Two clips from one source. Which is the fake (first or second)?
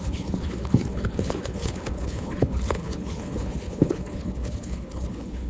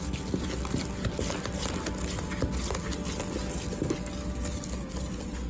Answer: first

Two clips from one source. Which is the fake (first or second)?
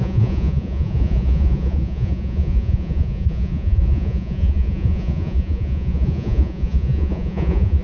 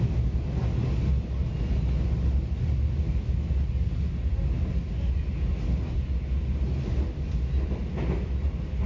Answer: first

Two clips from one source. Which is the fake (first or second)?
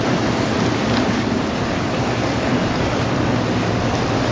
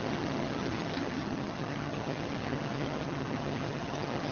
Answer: second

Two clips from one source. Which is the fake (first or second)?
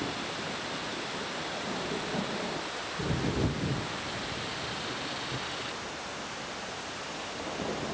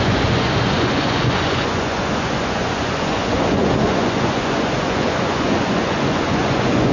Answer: second